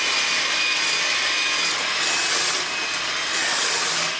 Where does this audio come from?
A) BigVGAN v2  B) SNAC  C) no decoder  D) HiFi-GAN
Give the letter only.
C